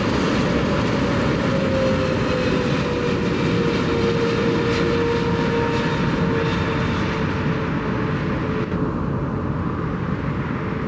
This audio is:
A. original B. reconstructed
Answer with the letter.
A